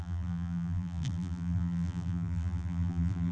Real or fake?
fake